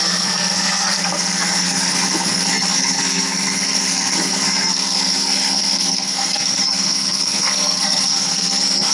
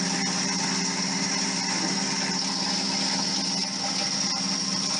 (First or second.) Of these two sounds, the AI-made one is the first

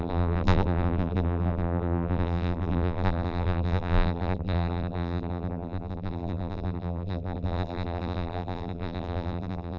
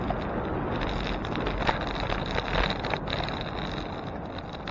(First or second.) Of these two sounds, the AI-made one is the first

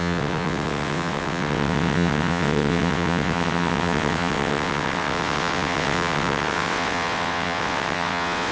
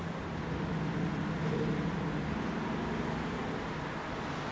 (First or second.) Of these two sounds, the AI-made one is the first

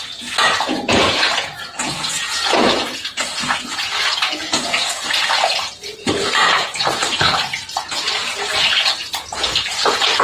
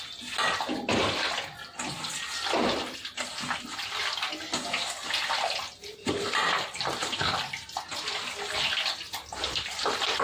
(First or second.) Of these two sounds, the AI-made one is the first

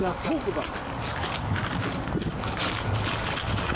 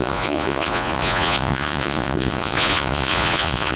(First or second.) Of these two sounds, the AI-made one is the second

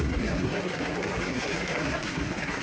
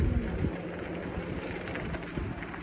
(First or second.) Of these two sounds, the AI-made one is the first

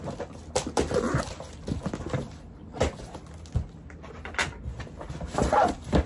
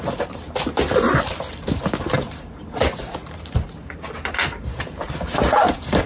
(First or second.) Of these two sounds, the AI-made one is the second